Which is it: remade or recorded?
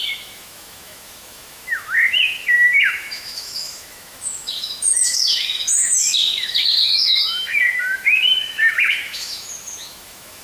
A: remade